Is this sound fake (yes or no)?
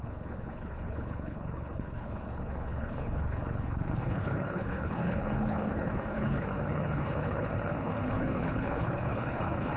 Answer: yes